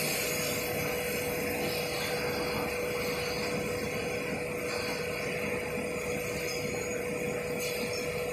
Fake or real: real